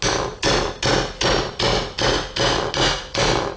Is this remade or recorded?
recorded